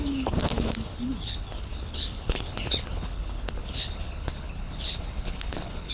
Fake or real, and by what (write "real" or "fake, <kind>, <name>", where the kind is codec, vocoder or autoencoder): fake, codec, HILCodec